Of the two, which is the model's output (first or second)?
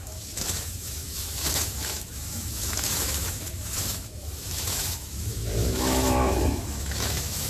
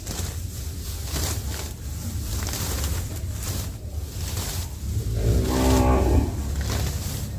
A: first